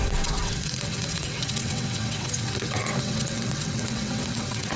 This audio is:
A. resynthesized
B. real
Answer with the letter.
A